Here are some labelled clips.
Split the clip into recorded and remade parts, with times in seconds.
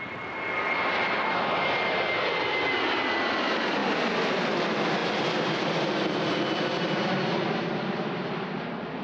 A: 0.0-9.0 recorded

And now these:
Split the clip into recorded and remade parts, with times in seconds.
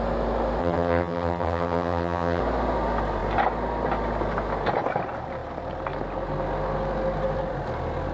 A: 0.0-0.6 recorded; 0.6-2.4 remade; 2.4-8.1 recorded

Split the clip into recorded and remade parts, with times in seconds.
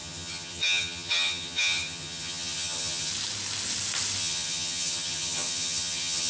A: 0.0-3.1 remade; 3.1-4.2 recorded; 4.2-6.3 remade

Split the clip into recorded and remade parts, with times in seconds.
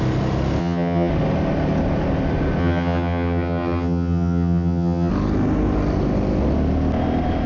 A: 0.0-0.6 recorded; 0.6-1.1 remade; 1.1-2.6 recorded; 2.6-5.1 remade; 5.1-7.5 recorded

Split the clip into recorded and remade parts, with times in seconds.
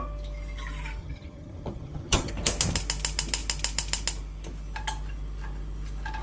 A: 0.0-1.0 recorded; 1.0-2.3 remade; 2.3-6.2 recorded